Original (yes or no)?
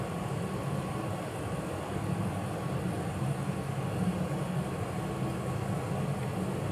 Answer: yes